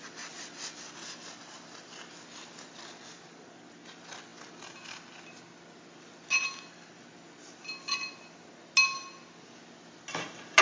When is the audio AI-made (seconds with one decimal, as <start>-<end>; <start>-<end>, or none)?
none